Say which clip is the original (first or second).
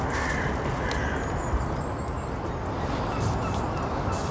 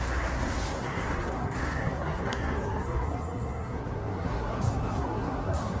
first